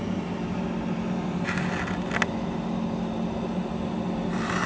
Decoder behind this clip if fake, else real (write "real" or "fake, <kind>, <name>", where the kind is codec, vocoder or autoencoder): real